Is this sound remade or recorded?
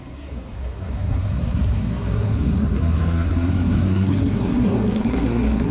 remade